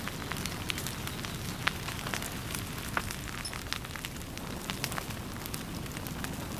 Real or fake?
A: real